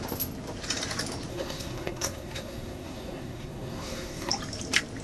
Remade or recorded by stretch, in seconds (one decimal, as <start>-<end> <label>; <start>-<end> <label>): 0.0-1.3 recorded; 1.3-4.3 remade; 4.3-5.0 recorded